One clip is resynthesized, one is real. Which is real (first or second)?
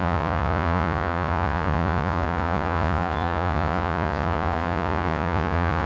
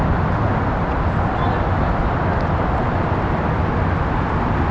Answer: second